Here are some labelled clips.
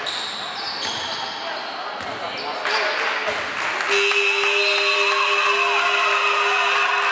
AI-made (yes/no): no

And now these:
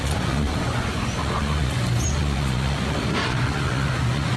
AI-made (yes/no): yes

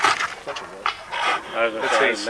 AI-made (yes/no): no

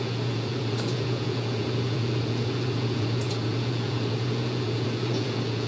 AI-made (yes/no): yes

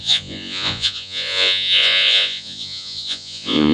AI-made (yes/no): yes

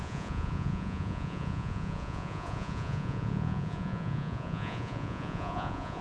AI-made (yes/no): yes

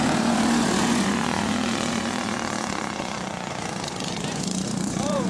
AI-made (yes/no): yes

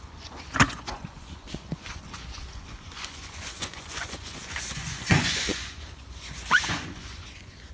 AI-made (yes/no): yes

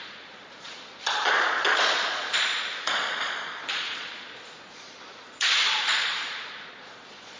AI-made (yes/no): yes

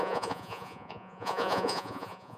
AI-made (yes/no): yes